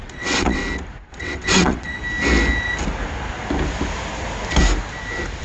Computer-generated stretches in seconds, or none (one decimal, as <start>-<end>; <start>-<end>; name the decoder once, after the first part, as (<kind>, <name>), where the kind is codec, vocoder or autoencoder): 0.0-0.6 (vocoder, WaveNeXt); 1.1-2.0